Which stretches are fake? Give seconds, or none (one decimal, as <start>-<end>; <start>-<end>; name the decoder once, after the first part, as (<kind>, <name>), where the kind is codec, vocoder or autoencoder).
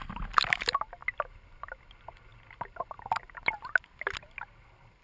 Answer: none